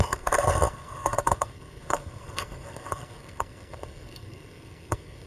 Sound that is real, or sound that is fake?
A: fake